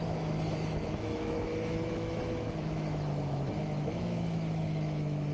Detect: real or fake fake